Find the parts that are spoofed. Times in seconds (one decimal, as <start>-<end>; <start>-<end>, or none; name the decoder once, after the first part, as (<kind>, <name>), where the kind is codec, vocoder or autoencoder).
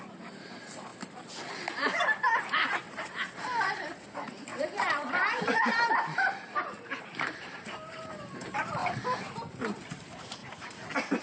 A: 0.0-0.9 (vocoder, BigVGAN v2); 1.7-8.8; 9.5-10.4